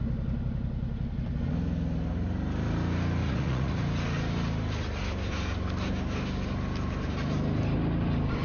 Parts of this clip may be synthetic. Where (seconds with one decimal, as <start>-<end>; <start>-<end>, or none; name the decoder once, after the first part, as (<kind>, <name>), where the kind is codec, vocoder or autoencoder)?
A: 3.2-3.8 (vocoder, Vocos)